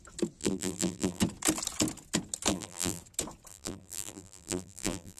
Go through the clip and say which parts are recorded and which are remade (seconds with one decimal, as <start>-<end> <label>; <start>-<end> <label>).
0.0-0.4 recorded; 0.4-1.2 remade; 1.2-2.5 recorded; 2.5-3.0 remade; 3.0-3.5 recorded; 3.5-5.2 remade